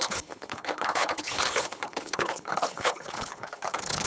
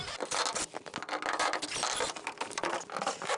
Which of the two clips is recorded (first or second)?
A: second